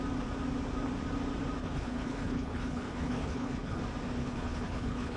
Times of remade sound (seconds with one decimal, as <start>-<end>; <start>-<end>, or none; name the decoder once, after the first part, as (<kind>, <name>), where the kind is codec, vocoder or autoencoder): 1.6-3.8 (codec, HILCodec); 4.2-5.2